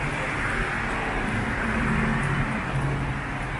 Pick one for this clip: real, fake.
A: real